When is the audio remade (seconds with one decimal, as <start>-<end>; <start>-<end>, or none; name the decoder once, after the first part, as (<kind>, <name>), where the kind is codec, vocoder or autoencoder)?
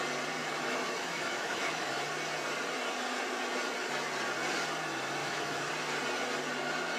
0.4-1.9 (autoencoder, DAC-VAE); 5.2-5.7